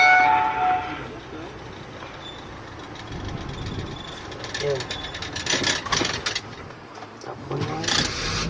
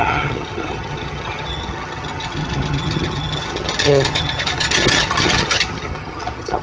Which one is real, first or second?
first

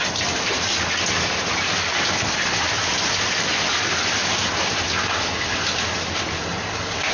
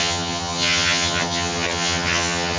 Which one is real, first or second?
first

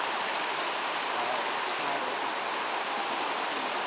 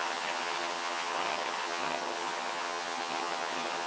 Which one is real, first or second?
first